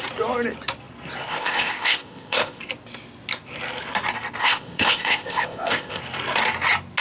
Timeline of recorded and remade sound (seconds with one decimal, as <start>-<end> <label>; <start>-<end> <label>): 0.0-1.3 recorded; 1.3-2.6 remade; 2.6-4.4 recorded; 4.4-6.0 remade; 6.0-7.0 recorded